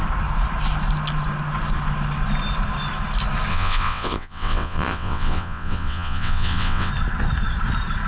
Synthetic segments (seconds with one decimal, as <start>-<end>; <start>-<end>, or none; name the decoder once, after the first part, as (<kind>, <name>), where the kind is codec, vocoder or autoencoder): 3.5-6.9 (vocoder, WaveNeXt)